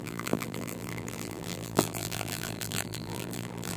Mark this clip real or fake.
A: fake